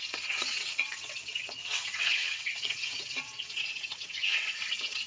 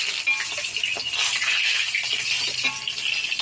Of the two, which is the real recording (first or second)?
second